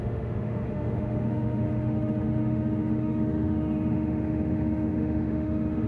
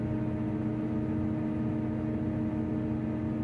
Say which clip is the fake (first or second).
first